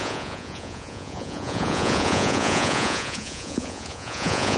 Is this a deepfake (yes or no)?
yes